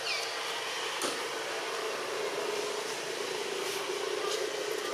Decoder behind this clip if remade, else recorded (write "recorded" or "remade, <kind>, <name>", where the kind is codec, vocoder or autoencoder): recorded